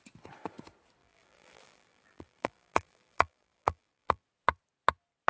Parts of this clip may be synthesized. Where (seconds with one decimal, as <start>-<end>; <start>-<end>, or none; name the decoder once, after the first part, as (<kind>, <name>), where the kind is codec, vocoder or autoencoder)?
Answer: 1.0-4.2 (vocoder, BigVGAN v2)